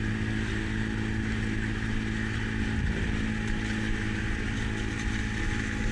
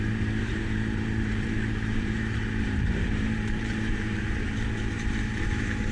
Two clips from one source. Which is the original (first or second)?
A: first